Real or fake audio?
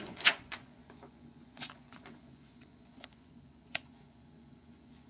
fake